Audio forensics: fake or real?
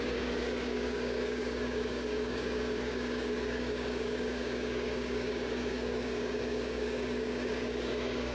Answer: fake